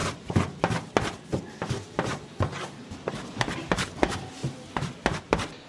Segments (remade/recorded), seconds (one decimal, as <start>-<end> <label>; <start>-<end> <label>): 0.0-2.4 recorded; 2.4-4.4 remade; 4.4-5.2 recorded; 5.2-5.7 remade